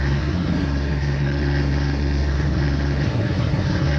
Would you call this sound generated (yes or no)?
yes